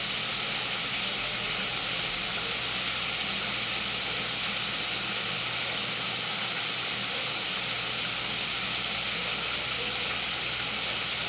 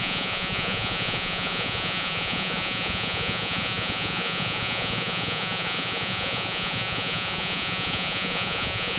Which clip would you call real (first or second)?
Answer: first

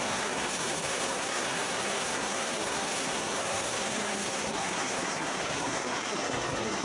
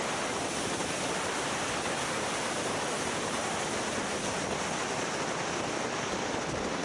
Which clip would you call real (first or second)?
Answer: second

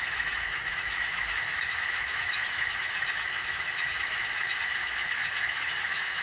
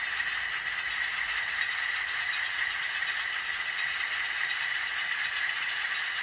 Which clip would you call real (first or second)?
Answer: second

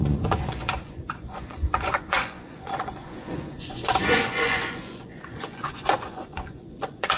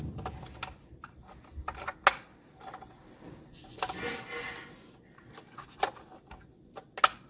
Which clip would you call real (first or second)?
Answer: second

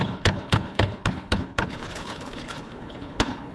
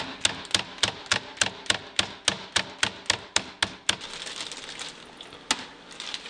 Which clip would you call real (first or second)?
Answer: second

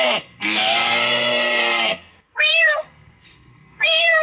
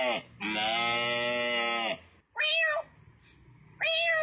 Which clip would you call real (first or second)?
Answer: second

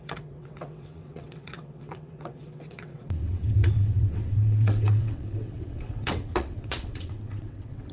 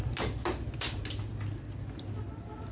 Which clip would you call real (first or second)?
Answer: second